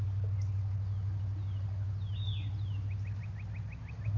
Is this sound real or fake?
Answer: real